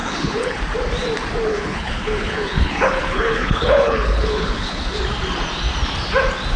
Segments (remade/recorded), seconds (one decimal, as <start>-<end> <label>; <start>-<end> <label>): 0.0-0.6 remade; 0.6-1.5 recorded; 1.5-5.0 remade; 5.0-6.6 recorded